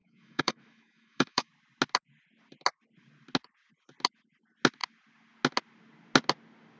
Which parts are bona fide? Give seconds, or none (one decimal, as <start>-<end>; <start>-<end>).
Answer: 1.5-6.8